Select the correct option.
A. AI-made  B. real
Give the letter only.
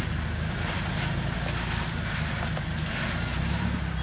B